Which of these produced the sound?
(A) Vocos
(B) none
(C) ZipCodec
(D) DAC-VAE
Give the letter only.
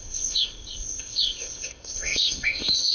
C